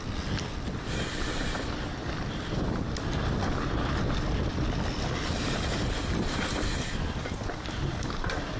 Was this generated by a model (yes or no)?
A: no